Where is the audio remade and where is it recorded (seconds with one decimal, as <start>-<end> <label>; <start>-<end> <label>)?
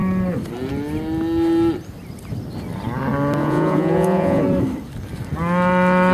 0.0-3.4 recorded; 3.4-4.4 remade; 4.4-6.1 recorded